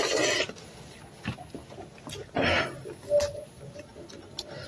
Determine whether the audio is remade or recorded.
recorded